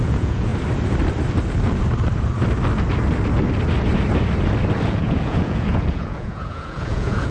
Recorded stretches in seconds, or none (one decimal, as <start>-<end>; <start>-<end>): 0.5-4.9